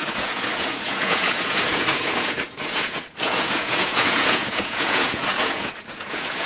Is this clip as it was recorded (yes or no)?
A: no